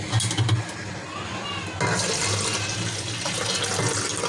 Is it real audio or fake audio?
real